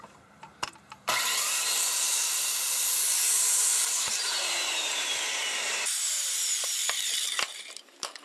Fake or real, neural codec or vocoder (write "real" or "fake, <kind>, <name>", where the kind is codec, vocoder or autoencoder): fake, vocoder, BigVGAN v2